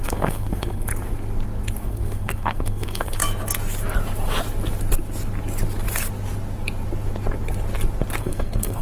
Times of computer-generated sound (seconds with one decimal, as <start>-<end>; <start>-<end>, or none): 0.0-0.9; 1.8-3.2; 8.2-8.8